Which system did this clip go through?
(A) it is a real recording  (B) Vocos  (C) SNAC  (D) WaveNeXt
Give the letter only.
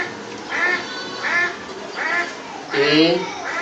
A